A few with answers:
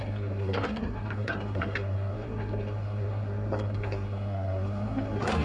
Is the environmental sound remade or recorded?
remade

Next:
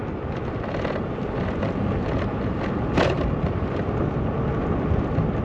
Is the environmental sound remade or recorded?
recorded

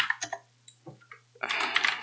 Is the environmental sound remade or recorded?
recorded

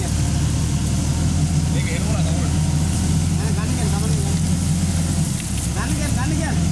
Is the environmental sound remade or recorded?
recorded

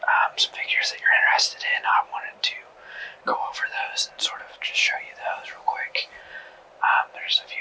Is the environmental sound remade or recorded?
recorded